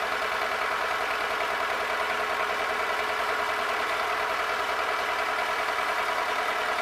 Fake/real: real